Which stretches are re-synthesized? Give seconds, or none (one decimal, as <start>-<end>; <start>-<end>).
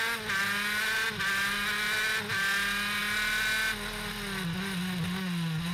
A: none